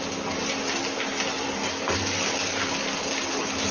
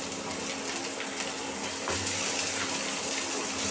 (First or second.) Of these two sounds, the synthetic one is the second